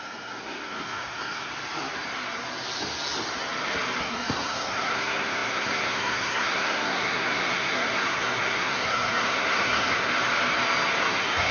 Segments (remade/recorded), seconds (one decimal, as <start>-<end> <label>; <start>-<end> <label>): 0.0-1.5 remade; 1.5-4.0 recorded; 4.0-10.1 remade; 10.1-11.0 recorded; 11.0-11.5 remade